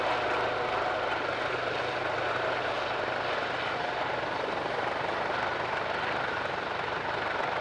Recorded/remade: recorded